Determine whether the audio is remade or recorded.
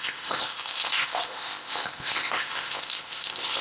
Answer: remade